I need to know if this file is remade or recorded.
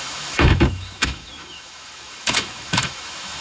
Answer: remade